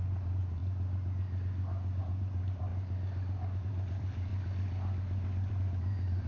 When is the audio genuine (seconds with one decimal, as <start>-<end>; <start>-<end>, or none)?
0.6-2.0; 2.7-3.6; 4.3-5.5